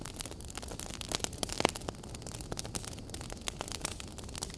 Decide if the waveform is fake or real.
real